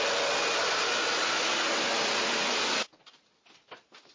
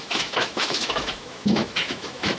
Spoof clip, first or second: second